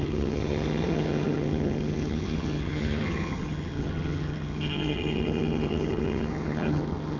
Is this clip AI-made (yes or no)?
yes